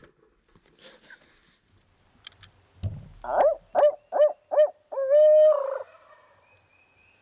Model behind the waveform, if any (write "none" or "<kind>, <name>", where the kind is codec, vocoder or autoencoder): none